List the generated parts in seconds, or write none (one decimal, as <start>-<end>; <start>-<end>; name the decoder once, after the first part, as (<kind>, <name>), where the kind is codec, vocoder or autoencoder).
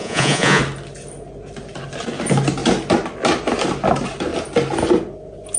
0.0-0.6 (vocoder, Vocos)